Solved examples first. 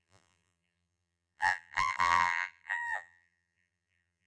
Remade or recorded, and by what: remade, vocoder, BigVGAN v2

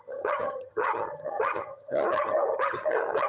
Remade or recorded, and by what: remade, vocoder, HiFi-GAN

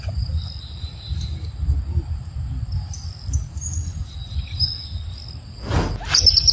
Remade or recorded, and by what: recorded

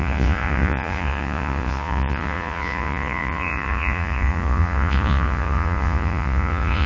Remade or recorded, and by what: remade, vocoder, Vocos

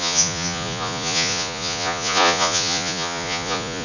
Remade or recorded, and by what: remade, vocoder, Vocos